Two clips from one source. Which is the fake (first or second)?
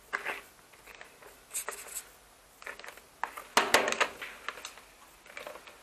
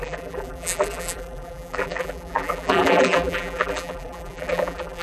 second